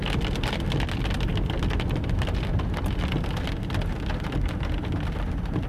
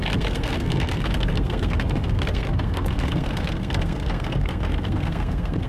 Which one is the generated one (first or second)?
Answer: second